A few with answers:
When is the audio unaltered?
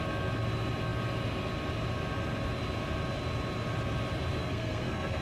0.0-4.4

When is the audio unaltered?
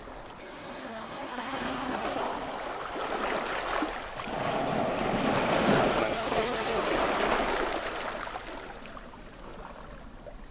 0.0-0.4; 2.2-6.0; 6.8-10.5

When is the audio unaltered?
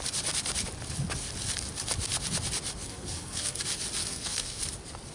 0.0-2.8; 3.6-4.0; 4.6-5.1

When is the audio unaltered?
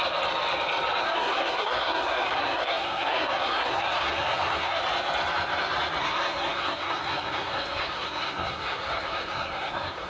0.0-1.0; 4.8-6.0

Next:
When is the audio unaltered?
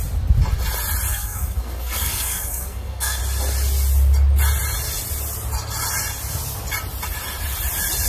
0.0-1.1; 3.2-8.1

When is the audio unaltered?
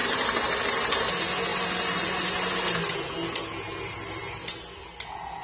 0.0-5.4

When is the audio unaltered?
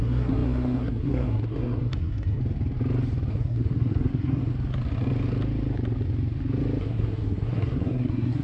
2.4-3.3; 4.5-6.8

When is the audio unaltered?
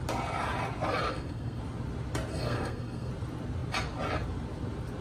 0.0-1.1; 1.6-2.3; 3.1-5.0